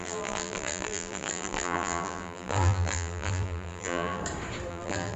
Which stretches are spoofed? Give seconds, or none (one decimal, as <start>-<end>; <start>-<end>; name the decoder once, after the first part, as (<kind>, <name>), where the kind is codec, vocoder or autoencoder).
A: 0.0-4.2 (vocoder, BigVGAN v2); 4.7-5.2